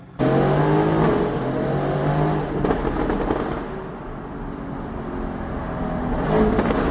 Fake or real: real